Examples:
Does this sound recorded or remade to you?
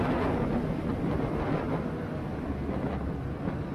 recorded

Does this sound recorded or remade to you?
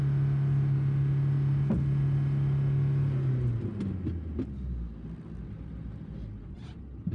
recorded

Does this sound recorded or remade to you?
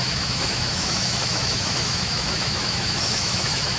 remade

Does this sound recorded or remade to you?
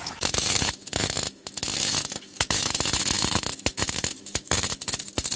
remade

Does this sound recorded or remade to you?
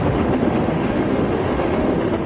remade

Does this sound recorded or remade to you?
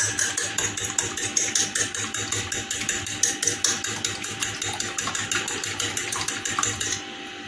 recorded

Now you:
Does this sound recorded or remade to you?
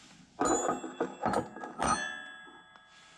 recorded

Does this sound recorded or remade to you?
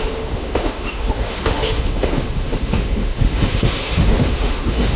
remade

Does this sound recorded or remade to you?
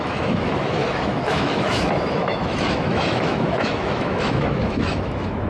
remade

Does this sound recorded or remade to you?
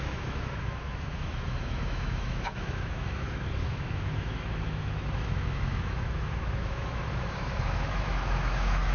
remade